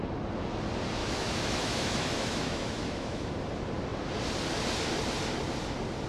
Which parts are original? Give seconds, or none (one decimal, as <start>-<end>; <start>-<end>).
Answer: 0.0-1.0; 3.3-6.1